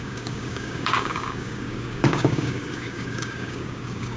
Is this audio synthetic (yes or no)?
yes